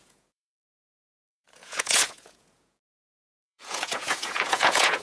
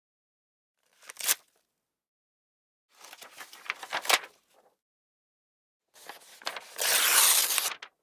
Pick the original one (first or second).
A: second